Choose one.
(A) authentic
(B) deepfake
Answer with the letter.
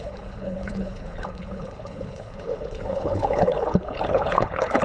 B